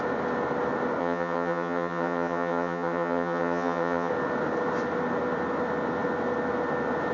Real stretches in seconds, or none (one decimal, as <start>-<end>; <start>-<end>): 0.0-1.0; 4.1-7.1